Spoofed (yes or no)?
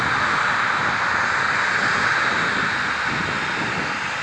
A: no